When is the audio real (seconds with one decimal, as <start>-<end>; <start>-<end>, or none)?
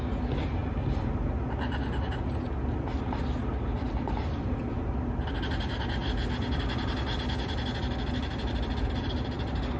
0.0-9.8